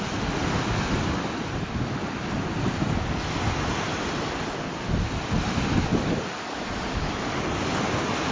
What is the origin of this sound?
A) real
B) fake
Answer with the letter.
A